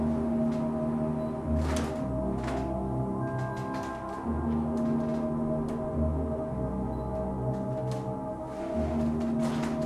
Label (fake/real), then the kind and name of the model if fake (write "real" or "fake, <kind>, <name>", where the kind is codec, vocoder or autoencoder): real